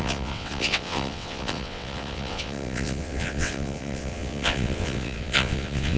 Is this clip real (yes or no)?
no